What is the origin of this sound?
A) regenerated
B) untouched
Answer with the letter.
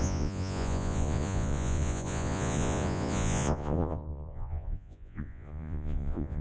A